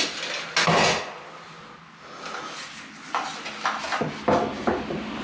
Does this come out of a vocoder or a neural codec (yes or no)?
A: no